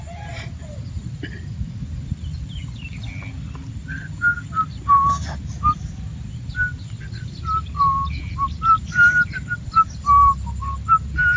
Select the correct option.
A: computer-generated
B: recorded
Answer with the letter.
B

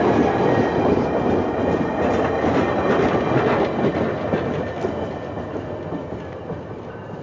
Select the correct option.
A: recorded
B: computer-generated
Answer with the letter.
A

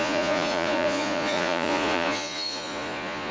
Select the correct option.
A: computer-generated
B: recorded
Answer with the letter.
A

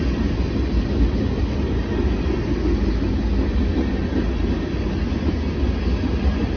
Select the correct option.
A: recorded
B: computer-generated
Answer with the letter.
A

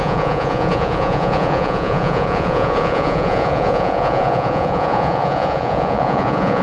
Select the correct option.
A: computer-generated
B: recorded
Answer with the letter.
A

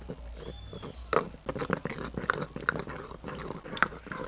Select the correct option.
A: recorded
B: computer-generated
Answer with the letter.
A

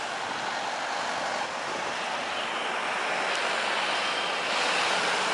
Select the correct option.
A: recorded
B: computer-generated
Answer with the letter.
A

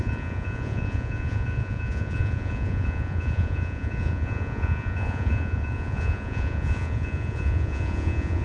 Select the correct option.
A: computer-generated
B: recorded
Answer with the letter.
A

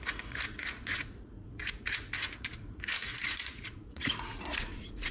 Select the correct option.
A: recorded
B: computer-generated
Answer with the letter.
B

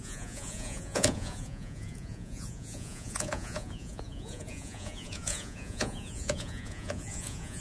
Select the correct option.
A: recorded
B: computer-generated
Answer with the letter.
B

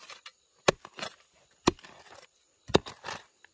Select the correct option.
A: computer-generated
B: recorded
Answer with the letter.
B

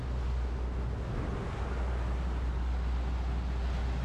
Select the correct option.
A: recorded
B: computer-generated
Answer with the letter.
A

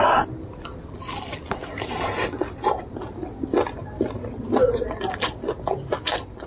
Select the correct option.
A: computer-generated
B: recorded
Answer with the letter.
B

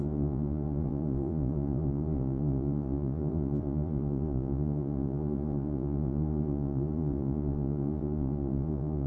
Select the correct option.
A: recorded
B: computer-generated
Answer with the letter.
B